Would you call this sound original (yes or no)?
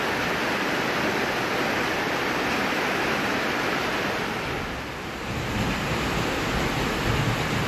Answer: yes